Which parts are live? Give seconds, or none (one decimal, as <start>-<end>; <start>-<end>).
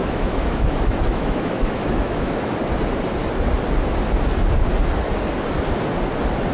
2.5-6.5